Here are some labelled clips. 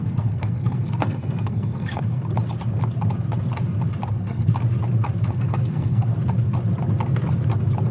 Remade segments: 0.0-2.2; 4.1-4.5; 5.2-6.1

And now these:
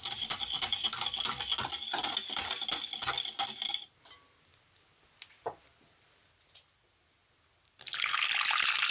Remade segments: none

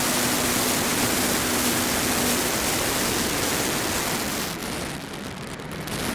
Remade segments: none

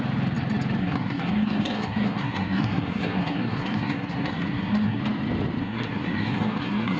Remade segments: 0.8-5.0; 5.6-7.0

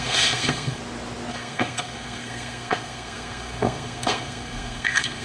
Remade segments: 0.0-0.8; 1.3-5.2

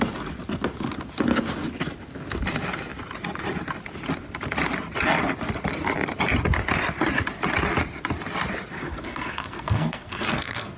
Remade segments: 8.7-10.8